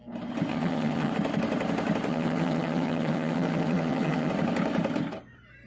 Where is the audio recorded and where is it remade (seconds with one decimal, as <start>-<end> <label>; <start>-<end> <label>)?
0.0-0.5 recorded; 0.5-1.1 remade; 1.1-2.1 recorded; 2.1-4.3 remade; 4.3-5.7 recorded